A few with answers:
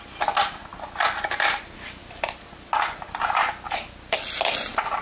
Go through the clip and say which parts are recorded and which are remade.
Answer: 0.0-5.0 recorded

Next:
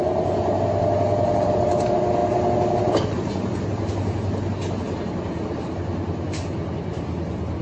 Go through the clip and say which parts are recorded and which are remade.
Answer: 0.0-7.6 recorded

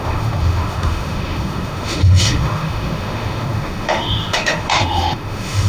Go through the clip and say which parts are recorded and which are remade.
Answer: 0.0-5.7 remade

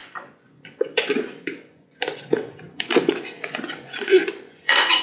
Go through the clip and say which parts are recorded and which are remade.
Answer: 0.0-5.0 remade

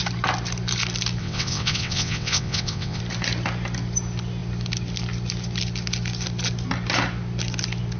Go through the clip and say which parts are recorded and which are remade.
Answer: 0.0-1.2 recorded; 1.2-3.0 remade; 3.0-8.0 recorded

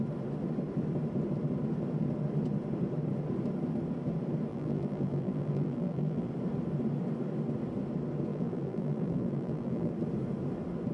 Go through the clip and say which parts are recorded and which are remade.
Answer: 0.0-4.5 recorded; 4.5-6.3 remade; 6.3-8.3 recorded; 8.3-9.9 remade; 9.9-10.9 recorded

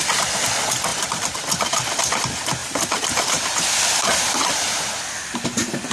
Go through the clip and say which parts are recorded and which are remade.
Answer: 0.0-2.6 recorded; 2.6-3.7 remade; 3.7-5.9 recorded